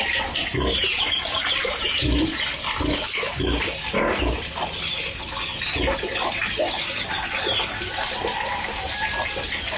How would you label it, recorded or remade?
recorded